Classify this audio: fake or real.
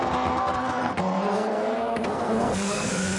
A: fake